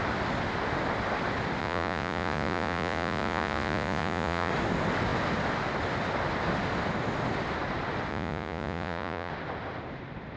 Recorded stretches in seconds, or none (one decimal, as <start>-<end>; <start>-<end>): 0.0-1.6; 4.5-8.1; 9.3-10.4